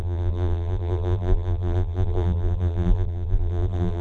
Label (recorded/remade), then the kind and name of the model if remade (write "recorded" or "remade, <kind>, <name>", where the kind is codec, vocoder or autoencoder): remade, vocoder, BigVGAN v2